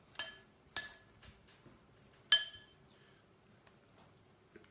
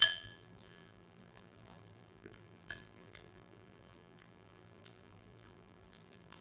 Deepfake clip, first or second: second